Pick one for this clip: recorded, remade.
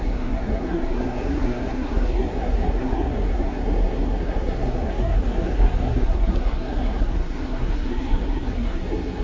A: remade